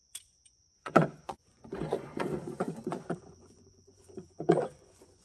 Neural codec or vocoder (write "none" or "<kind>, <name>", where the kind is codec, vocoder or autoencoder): vocoder, Vocos